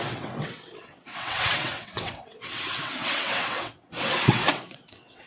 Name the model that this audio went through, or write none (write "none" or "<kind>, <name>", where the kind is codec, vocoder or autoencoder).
vocoder, WaveNeXt